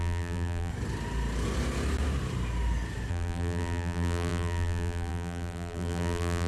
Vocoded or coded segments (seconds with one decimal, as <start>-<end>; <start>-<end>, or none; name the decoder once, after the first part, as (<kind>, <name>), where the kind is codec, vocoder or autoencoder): 0.0-0.7 (vocoder, BigVGAN v2); 3.1-6.5